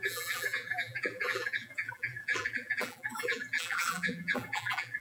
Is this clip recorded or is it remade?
remade